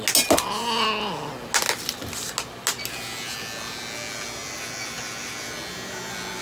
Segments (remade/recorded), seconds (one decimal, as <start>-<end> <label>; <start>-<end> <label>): 0.0-6.4 recorded